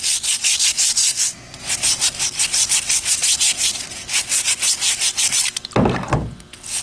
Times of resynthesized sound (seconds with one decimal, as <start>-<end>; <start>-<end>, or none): 1.0-1.7